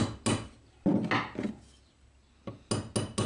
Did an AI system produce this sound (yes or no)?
no